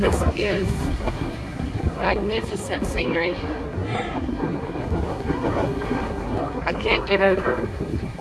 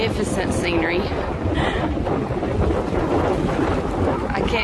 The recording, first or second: second